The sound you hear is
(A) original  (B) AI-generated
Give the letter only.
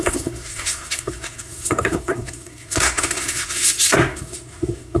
B